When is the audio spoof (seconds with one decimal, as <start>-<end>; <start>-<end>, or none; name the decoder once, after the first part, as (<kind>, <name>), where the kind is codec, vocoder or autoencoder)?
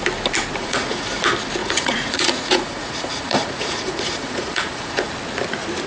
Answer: 0.6-1.2 (vocoder, Vocos); 1.6-5.1